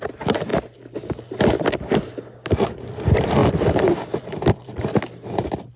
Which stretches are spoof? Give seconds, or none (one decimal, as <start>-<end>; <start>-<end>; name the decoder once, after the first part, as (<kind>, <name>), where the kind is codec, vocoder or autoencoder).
3.4-4.7 (vocoder, BigVGAN v2)